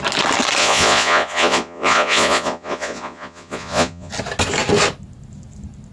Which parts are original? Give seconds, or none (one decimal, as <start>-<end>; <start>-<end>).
0.0-0.6; 4.1-5.9